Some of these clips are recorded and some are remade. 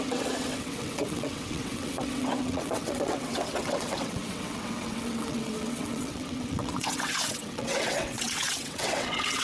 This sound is remade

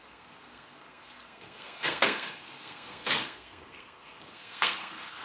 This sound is remade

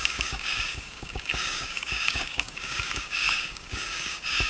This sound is remade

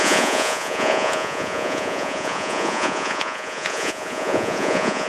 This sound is remade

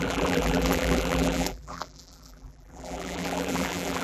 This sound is remade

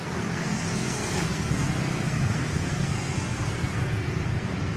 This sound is remade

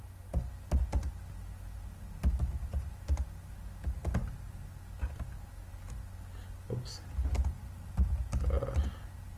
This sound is recorded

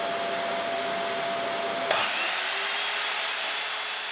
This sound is recorded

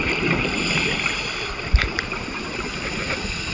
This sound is recorded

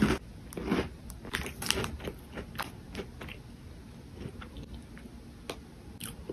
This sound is recorded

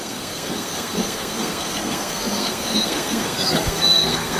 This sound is remade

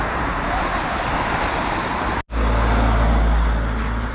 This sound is recorded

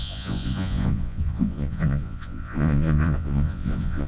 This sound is remade